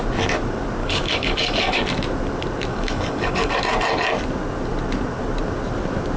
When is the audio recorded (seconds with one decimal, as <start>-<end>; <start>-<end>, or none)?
0.0-0.8; 1.8-2.7; 3.6-6.2

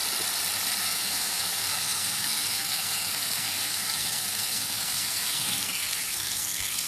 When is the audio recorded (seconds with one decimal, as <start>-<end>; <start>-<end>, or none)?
0.0-0.8